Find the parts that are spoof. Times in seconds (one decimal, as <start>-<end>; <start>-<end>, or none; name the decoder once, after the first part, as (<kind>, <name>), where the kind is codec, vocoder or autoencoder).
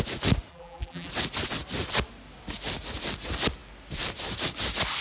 0.5-1.1 (vocoder, BigVGAN v2)